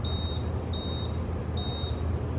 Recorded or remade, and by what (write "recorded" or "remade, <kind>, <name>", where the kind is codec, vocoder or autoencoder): recorded